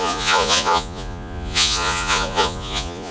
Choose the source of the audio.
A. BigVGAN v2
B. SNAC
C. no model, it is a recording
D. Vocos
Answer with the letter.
D